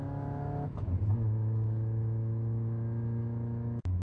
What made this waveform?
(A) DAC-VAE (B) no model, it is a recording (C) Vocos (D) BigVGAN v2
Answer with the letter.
A